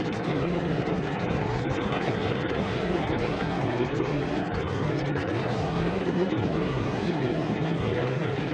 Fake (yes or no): yes